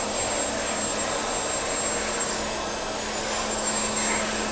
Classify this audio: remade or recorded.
recorded